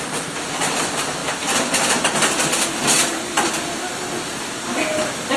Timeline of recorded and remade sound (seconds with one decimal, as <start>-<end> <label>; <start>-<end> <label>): 0.0-5.4 recorded